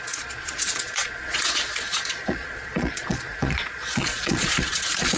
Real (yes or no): no